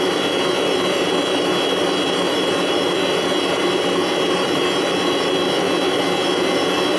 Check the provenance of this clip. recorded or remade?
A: remade